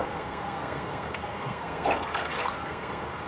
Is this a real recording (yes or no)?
no